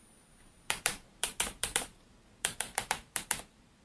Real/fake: fake